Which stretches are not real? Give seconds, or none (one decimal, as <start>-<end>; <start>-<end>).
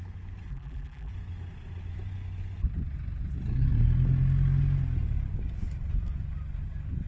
0.5-1.1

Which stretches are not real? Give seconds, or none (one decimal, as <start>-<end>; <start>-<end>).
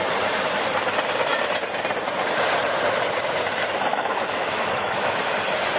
3.9-5.2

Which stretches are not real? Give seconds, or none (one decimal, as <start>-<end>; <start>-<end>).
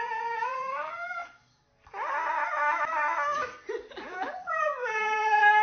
0.0-1.2; 3.9-5.6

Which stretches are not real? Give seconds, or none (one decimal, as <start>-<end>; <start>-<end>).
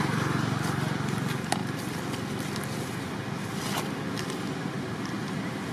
none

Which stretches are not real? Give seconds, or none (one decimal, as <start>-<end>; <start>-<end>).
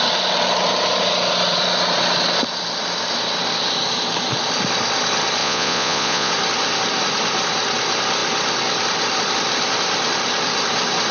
5.4-6.3